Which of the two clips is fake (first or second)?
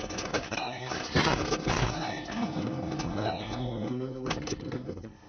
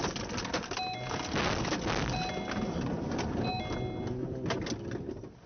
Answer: first